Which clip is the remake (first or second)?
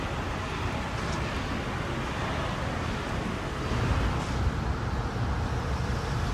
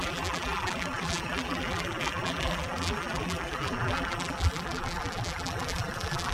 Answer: second